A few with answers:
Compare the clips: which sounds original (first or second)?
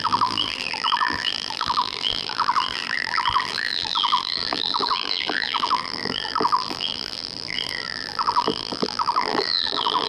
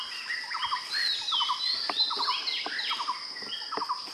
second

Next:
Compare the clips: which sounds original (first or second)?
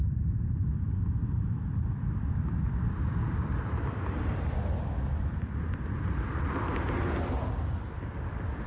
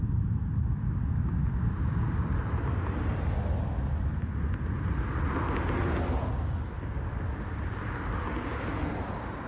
second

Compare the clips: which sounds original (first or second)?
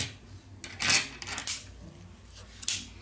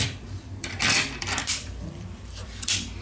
first